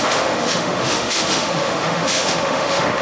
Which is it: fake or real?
fake